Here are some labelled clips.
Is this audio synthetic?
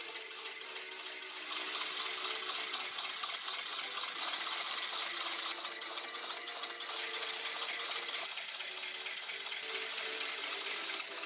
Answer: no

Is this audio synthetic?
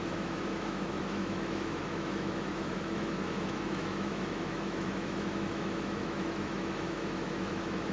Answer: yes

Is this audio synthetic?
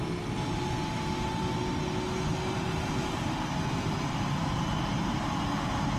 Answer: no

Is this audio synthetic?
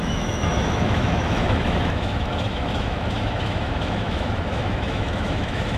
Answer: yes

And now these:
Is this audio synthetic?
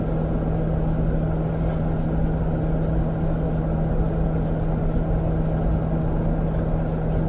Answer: no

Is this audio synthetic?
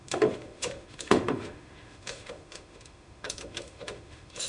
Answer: yes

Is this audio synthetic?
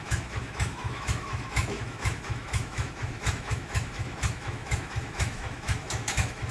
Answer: yes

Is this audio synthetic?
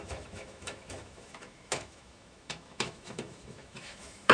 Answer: yes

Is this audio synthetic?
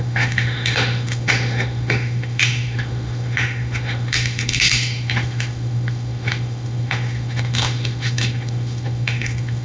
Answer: yes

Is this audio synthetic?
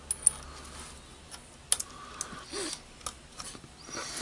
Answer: no